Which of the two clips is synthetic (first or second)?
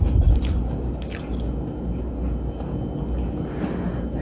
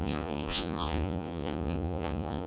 second